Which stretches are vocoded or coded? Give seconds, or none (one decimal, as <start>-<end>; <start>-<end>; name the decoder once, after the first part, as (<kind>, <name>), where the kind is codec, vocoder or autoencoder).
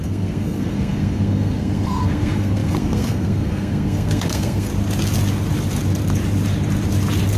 0.0-4.7 (codec, SNAC)